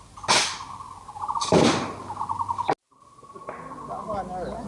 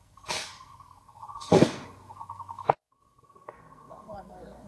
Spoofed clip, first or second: second